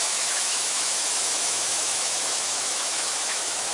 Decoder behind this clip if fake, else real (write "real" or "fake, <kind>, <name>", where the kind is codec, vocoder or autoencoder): fake, autoencoder, DAC-VAE